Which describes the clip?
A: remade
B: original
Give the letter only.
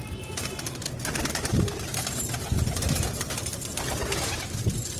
A